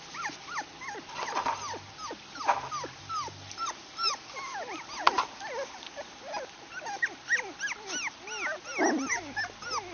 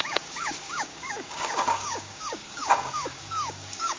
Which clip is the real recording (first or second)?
first